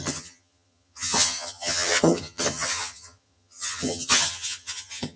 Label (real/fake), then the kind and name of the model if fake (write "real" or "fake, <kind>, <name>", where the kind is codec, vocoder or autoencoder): fake, vocoder, HiFi-GAN